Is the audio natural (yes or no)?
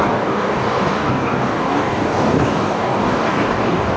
no